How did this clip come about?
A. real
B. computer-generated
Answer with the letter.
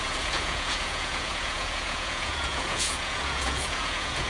B